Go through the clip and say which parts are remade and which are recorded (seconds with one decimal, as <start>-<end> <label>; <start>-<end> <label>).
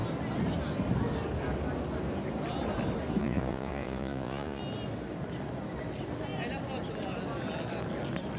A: 0.0-3.2 recorded; 3.2-4.6 remade; 4.6-8.4 recorded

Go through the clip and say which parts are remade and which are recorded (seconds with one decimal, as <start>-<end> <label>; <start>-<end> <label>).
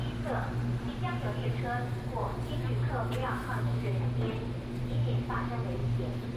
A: 0.0-3.2 recorded; 3.2-4.0 remade; 4.0-6.4 recorded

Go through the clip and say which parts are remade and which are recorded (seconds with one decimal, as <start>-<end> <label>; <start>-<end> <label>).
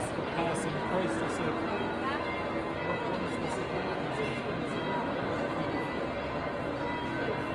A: 0.0-4.7 recorded; 4.7-5.5 remade; 5.5-7.5 recorded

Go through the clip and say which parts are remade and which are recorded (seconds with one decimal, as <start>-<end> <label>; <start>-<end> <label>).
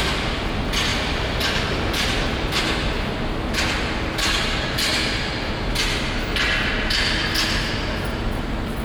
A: 0.0-0.9 recorded; 0.9-2.2 remade; 2.2-8.8 recorded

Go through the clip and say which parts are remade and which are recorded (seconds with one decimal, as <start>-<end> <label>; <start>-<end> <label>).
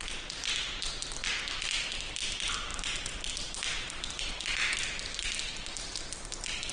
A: 0.0-6.7 recorded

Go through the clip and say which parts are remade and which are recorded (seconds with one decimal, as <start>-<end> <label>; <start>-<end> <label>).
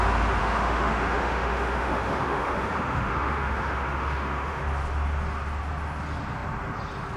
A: 0.0-0.4 recorded; 0.4-4.6 remade; 4.6-7.2 recorded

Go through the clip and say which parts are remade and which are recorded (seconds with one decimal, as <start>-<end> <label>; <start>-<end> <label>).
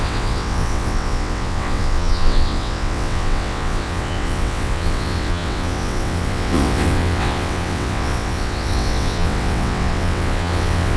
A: 0.0-11.0 remade